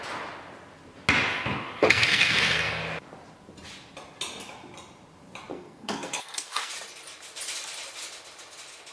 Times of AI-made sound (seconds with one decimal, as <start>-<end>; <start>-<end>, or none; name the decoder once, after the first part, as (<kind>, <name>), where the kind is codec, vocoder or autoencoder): 1.8-2.8 (codec, SNAC); 5.5-6.7